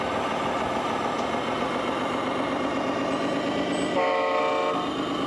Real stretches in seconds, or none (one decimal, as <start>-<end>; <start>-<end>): 0.0-3.9; 4.4-5.3